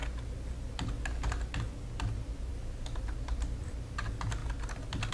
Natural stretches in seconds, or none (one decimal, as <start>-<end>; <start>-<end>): 0.0-5.1